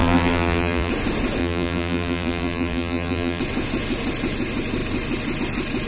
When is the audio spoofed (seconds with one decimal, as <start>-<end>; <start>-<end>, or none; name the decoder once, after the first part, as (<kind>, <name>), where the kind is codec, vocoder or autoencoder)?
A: 0.0-0.9 (vocoder, BigVGAN v2); 1.4-3.4